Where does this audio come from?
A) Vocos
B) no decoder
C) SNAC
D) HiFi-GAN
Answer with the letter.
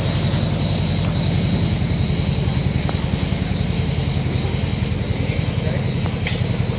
B